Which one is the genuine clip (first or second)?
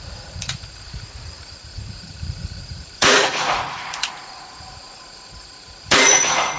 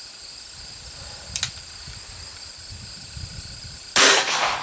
second